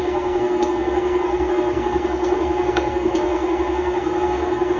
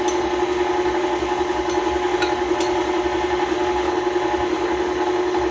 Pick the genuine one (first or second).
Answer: second